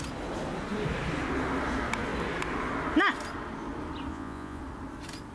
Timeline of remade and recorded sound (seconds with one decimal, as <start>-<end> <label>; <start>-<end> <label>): 0.0-4.1 recorded; 4.1-4.6 remade; 4.6-5.3 recorded